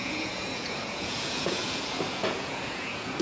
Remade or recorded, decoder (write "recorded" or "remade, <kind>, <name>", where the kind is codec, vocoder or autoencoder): remade, vocoder, Vocos